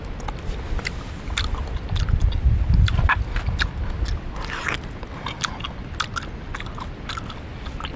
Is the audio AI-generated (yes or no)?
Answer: no